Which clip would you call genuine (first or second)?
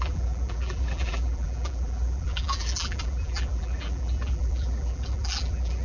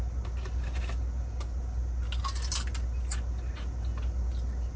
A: second